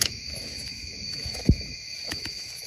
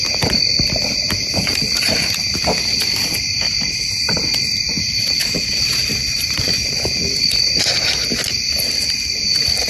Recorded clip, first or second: second